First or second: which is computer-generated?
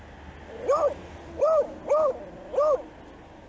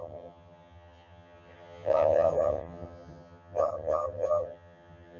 second